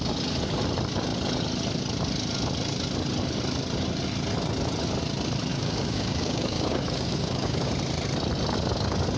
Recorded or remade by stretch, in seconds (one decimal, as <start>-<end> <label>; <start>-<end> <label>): 0.0-5.5 recorded; 5.5-7.7 remade; 7.7-9.2 recorded